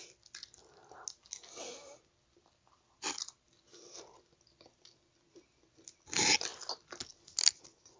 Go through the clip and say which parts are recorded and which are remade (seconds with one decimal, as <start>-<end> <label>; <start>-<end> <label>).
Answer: 0.0-8.0 recorded